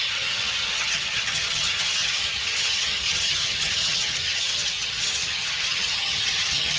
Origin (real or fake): fake